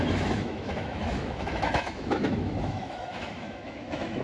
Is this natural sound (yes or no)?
no